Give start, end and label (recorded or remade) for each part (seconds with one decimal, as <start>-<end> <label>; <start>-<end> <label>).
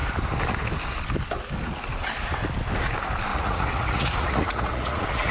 0.0-3.3 recorded; 3.3-5.3 remade